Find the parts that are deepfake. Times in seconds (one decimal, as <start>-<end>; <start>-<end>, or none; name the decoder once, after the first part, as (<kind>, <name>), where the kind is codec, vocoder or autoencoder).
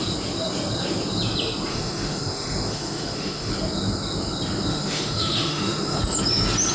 1.7-3.5 (autoencoder, DAC-VAE); 4.7-6.0